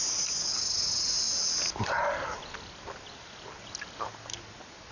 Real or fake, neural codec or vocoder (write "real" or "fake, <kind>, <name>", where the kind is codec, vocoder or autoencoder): real